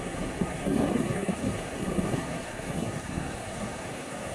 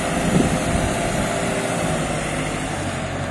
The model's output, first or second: first